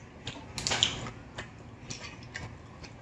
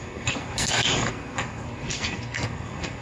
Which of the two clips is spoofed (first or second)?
second